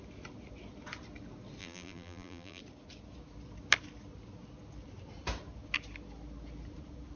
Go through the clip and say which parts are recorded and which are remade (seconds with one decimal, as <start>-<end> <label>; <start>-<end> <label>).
0.0-1.6 recorded; 1.6-2.6 remade; 2.6-7.2 recorded